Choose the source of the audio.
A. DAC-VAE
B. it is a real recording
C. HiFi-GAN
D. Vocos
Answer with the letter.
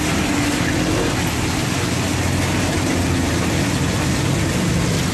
B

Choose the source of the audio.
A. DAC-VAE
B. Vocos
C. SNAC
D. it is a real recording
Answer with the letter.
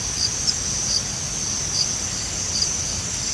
D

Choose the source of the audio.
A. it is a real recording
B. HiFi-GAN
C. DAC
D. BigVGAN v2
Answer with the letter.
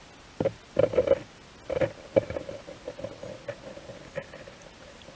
A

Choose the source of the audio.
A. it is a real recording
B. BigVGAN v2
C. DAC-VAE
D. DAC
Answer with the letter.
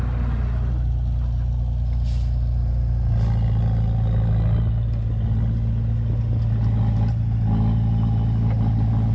A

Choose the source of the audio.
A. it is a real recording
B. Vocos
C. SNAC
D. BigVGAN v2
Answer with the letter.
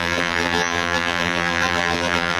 D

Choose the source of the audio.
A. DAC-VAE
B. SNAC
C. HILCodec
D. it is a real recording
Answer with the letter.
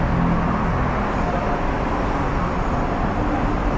D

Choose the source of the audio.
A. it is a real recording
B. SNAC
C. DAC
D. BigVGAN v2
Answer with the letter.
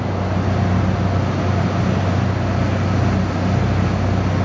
A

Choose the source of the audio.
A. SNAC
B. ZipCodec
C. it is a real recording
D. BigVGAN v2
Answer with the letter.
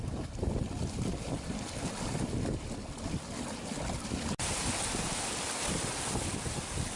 C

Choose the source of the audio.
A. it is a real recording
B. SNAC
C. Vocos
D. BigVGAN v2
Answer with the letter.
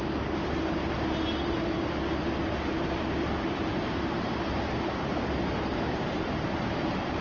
A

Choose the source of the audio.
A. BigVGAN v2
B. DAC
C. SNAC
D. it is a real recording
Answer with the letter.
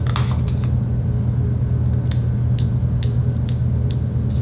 D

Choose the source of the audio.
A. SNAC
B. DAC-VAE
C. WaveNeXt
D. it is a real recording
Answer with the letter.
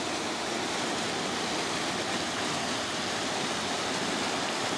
D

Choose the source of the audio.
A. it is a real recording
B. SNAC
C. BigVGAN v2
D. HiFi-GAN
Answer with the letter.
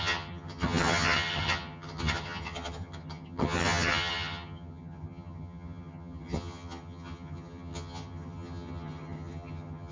D